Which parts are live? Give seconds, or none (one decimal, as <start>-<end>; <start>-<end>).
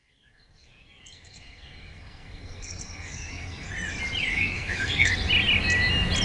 3.7-4.3; 5.1-6.2